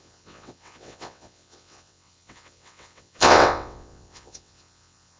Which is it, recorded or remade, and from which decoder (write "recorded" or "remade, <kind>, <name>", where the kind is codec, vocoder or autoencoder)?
remade, vocoder, WaveNeXt